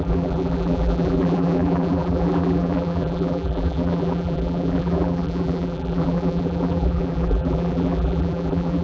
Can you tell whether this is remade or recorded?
remade